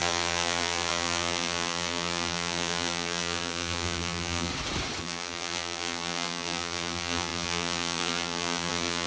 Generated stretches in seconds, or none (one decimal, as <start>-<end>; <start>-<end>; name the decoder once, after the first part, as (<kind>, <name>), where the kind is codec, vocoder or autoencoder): 0.0-4.5 (vocoder, BigVGAN v2); 5.0-9.1